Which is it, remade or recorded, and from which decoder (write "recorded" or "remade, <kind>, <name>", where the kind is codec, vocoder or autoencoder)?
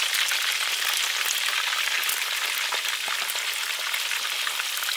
recorded